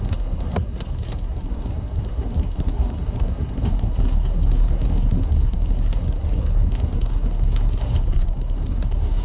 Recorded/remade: remade